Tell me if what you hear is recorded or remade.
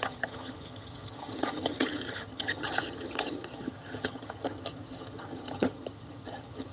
remade